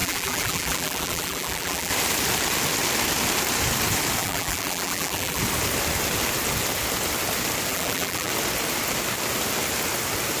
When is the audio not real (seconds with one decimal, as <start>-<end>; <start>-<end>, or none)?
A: 0.0-1.9; 4.2-5.4; 7.7-8.3